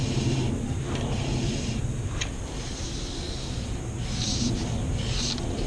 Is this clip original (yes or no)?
yes